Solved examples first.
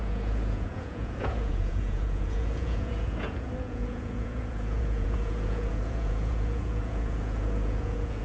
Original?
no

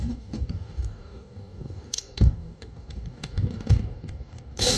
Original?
no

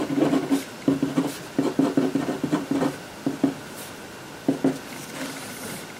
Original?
yes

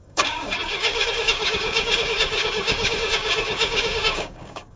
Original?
no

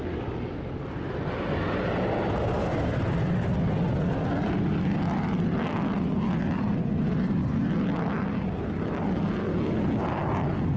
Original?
yes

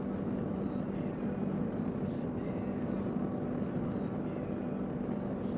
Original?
yes